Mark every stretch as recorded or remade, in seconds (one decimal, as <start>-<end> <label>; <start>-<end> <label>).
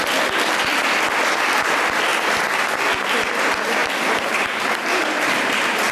0.0-5.9 recorded